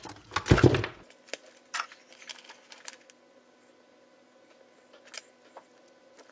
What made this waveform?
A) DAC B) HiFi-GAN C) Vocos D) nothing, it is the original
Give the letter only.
D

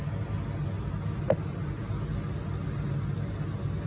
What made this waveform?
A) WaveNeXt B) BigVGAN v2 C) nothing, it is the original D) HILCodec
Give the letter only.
C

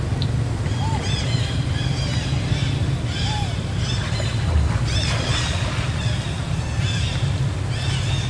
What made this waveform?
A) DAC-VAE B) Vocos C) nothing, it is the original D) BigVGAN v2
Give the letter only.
C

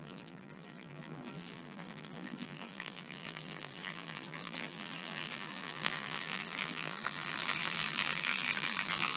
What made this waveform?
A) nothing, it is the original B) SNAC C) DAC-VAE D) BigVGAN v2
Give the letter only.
D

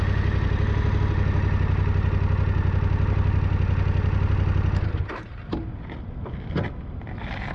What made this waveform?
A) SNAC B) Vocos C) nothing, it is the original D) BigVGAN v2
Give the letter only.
C